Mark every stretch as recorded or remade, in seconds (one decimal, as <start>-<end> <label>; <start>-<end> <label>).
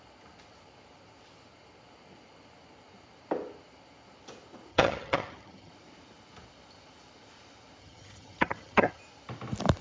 0.0-4.7 recorded; 4.7-5.7 remade; 5.7-7.8 recorded; 7.8-9.0 remade; 9.0-9.8 recorded